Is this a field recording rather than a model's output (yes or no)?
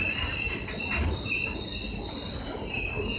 yes